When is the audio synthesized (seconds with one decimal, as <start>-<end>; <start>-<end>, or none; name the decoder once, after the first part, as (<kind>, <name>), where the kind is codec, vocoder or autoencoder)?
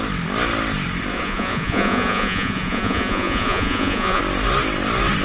1.1-4.2 (vocoder, Vocos)